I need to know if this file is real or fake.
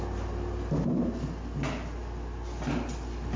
real